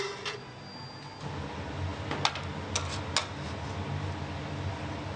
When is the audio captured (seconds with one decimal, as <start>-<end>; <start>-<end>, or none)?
0.0-5.2